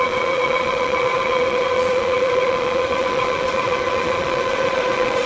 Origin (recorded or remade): remade